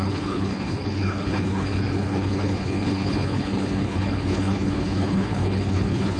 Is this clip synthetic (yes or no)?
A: yes